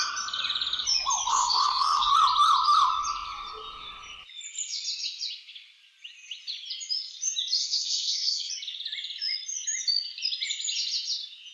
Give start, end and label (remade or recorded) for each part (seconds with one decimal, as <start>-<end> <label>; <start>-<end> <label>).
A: 0.0-1.3 recorded; 1.3-2.1 remade; 2.1-7.6 recorded; 7.6-8.5 remade; 8.5-11.5 recorded